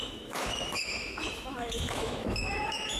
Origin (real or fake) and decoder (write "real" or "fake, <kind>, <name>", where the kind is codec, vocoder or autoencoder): fake, autoencoder, DAC-VAE